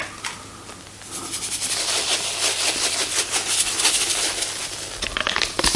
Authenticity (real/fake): real